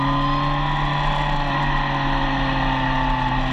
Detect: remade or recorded recorded